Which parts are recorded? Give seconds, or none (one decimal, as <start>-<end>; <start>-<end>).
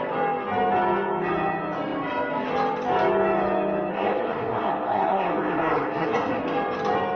0.0-3.9; 6.4-7.2